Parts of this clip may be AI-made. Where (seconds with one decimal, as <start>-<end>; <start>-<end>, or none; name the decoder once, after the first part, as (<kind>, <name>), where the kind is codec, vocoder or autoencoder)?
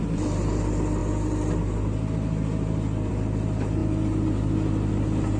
none